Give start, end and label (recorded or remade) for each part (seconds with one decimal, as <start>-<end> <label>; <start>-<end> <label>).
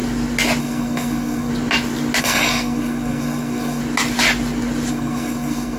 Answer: 0.0-0.6 recorded; 0.6-1.5 remade; 1.5-2.2 recorded; 2.2-3.8 remade; 3.8-4.9 recorded; 4.9-5.8 remade